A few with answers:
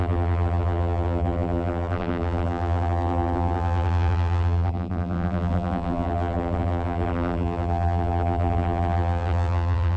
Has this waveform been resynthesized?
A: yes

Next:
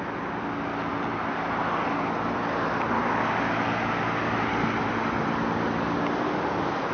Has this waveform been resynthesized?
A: no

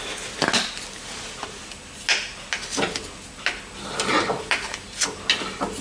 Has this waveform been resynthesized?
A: no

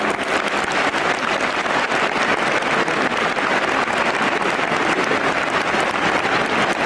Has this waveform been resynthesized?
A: no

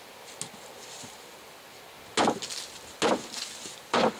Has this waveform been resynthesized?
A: no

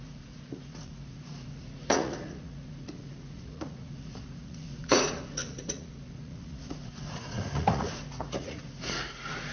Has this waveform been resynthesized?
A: yes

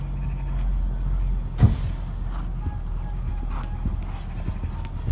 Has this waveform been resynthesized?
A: no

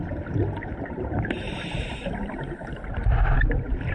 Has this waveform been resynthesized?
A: yes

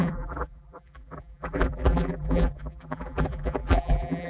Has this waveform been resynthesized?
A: yes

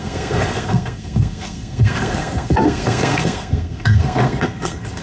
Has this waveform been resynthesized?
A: yes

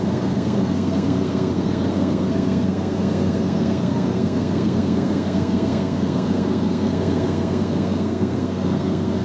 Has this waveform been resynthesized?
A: yes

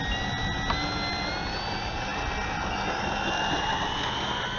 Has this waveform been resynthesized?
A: no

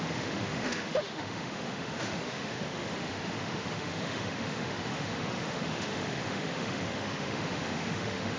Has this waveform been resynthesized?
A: yes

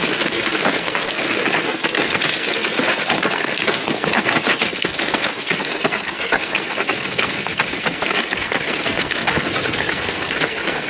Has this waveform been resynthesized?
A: yes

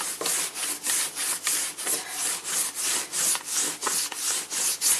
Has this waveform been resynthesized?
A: no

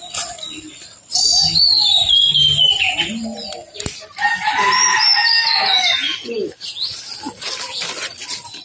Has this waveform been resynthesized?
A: no